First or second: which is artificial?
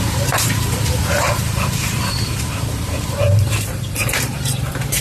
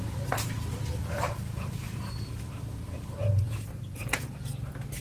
first